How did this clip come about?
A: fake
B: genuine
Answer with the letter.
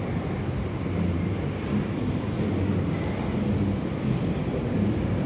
B